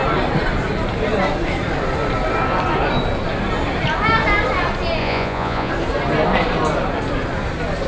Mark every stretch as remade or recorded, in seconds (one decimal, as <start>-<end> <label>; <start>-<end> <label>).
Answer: 0.0-5.0 recorded; 5.0-5.7 remade; 5.7-7.9 recorded